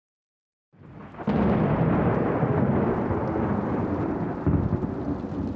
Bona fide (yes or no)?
yes